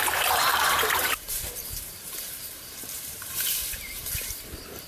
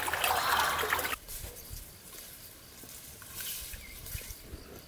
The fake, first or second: first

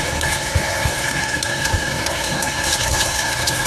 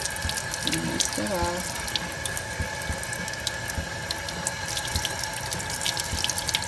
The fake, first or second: first